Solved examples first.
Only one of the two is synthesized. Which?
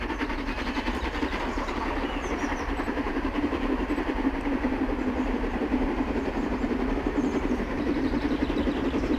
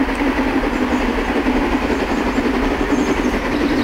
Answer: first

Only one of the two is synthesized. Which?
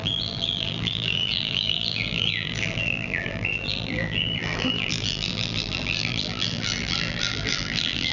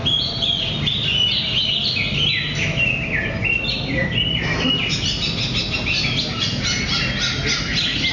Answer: first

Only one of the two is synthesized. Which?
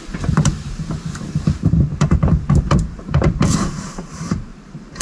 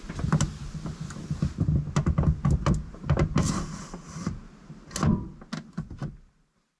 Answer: first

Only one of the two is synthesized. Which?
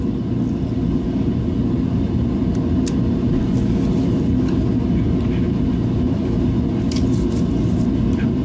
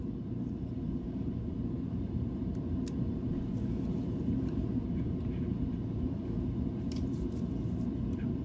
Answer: second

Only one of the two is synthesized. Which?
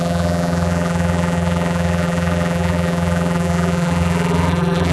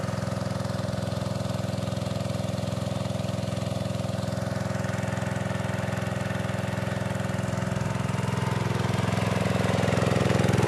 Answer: first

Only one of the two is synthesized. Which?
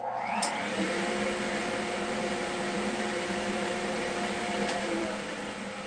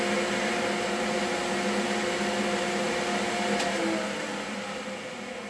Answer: first